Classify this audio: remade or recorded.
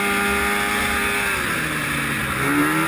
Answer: recorded